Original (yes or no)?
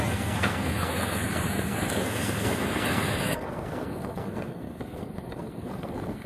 no